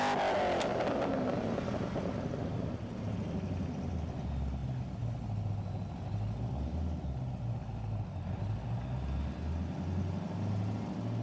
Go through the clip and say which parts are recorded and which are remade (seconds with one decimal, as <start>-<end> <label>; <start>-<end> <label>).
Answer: 0.0-11.2 recorded